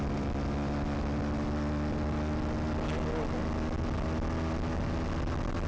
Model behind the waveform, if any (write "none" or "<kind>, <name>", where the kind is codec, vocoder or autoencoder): none